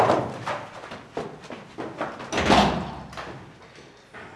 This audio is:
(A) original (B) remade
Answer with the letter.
A